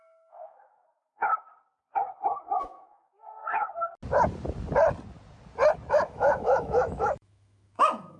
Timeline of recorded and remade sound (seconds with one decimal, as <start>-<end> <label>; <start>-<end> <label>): 0.0-1.5 remade; 1.5-2.4 recorded; 2.4-3.4 remade; 3.4-5.9 recorded; 5.9-8.2 remade